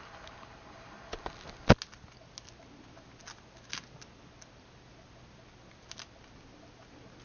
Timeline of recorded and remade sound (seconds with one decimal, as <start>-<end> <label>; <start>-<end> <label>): 0.0-7.2 recorded